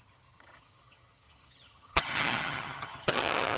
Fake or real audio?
fake